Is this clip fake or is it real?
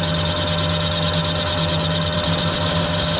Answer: real